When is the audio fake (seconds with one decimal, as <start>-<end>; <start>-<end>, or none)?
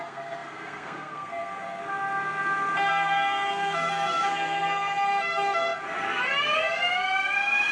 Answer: 0.0-1.8; 2.9-7.7